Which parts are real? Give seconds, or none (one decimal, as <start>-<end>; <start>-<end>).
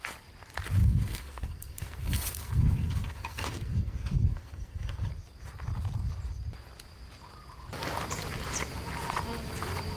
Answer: 0.0-0.8; 5.1-10.0